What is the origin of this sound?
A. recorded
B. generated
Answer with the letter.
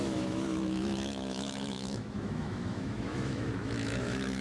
B